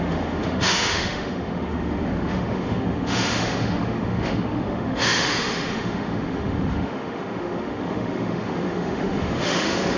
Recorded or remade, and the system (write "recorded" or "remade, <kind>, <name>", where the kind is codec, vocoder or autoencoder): remade, autoencoder, DAC-VAE